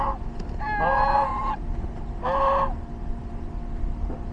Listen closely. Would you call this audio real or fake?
real